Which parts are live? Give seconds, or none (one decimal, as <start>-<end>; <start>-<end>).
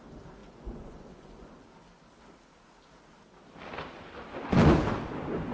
0.0-0.4; 1.5-5.5